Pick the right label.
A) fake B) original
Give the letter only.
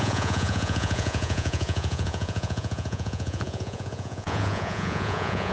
A